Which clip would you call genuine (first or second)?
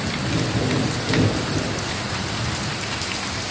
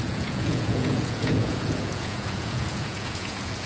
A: first